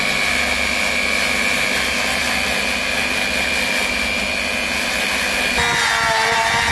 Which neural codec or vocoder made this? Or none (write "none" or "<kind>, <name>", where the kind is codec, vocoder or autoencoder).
none